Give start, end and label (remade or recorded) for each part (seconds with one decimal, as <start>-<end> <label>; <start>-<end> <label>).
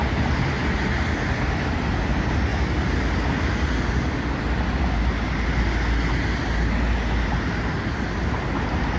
0.0-9.0 recorded